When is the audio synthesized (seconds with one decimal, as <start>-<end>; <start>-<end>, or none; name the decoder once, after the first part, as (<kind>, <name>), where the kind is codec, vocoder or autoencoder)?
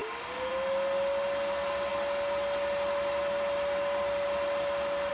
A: 0.0-0.5 (codec, DAC)